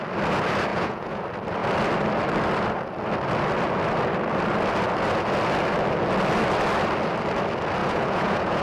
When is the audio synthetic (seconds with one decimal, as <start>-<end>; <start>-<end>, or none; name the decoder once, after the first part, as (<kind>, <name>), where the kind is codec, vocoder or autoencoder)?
0.7-1.2 (vocoder, Vocos); 7.8-8.6